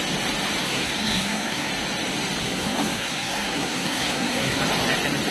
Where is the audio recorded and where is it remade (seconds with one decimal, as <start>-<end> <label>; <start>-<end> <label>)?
0.0-0.6 recorded; 0.6-1.7 remade; 1.7-2.4 recorded; 2.4-4.6 remade; 4.6-5.3 recorded